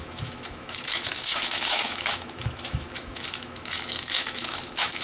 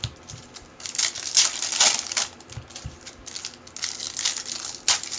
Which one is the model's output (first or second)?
first